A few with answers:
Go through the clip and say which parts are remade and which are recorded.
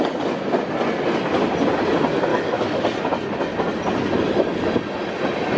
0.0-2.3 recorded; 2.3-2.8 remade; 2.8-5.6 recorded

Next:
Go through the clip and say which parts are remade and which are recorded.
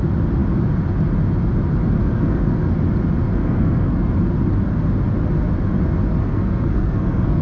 0.0-2.0 recorded; 2.0-2.7 remade; 2.7-3.3 recorded; 3.3-4.1 remade; 4.1-6.2 recorded; 6.2-7.4 remade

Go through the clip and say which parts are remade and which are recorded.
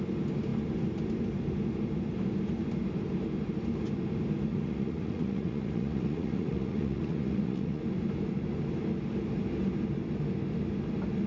0.0-4.5 recorded; 4.5-7.8 remade; 7.8-11.3 recorded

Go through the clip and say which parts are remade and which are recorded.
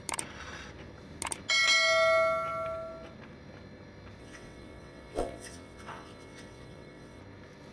0.0-4.2 recorded; 4.2-7.2 remade; 7.2-7.7 recorded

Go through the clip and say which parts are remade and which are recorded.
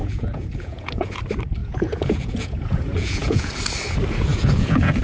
0.0-1.2 remade; 1.2-1.6 recorded; 1.6-3.5 remade; 3.5-4.3 recorded; 4.3-5.0 remade